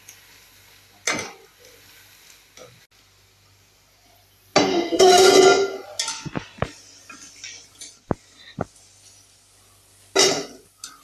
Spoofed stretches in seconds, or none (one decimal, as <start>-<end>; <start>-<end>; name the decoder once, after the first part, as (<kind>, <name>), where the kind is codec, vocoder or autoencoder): 4.7-5.3 (autoencoder, DAC-VAE)